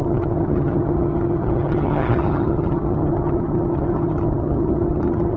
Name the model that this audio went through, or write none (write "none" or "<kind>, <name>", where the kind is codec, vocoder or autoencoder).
vocoder, HiFi-GAN